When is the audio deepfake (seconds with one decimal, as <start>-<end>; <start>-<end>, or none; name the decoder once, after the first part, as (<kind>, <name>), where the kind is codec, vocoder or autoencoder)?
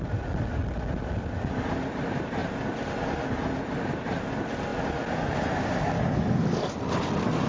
2.4-2.9 (vocoder, BigVGAN v2)